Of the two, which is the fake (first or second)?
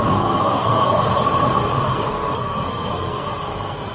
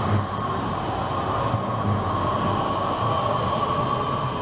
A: first